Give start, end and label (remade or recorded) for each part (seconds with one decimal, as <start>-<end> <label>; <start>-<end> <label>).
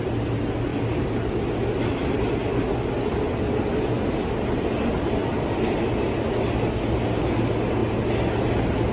0.0-8.9 recorded